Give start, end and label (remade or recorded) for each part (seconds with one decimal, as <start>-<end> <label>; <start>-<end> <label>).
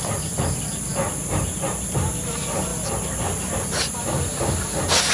0.0-5.1 recorded